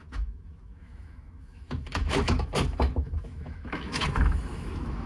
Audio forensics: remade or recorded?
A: remade